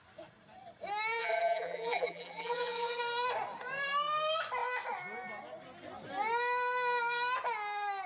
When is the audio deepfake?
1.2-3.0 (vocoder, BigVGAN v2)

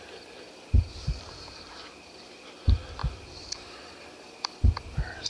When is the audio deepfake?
0.0-5.3 (vocoder, BigVGAN v2)